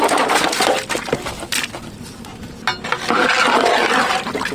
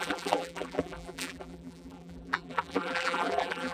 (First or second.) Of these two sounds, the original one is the first